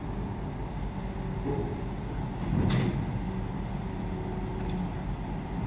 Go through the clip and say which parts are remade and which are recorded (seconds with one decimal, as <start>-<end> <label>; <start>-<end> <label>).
0.0-5.7 recorded